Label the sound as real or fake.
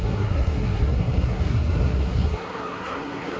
fake